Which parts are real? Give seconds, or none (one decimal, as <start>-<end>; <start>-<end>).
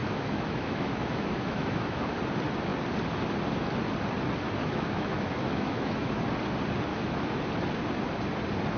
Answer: 2.1-4.6; 6.2-6.9; 7.5-8.8